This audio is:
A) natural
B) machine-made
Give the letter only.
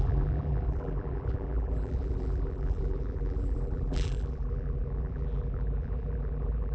B